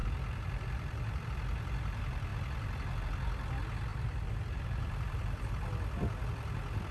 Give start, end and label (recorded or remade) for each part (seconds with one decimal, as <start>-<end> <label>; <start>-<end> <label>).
0.0-1.3 remade; 1.3-3.9 recorded; 3.9-5.5 remade; 5.5-6.9 recorded